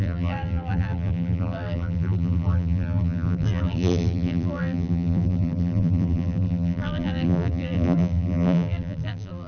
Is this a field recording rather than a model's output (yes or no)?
no